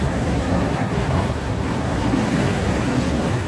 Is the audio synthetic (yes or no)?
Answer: yes